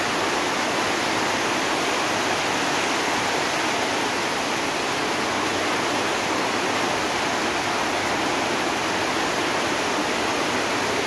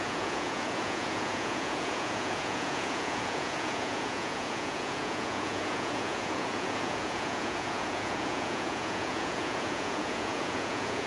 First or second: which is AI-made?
second